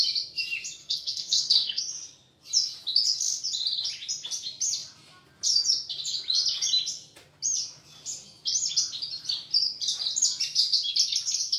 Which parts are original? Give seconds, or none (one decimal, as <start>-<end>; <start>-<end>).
0.0-0.8; 1.8-11.6